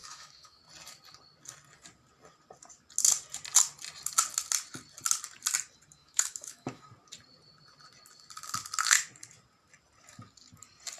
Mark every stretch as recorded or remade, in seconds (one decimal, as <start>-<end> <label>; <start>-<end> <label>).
0.0-0.6 remade; 0.6-6.0 recorded; 6.0-6.8 remade; 6.8-11.0 recorded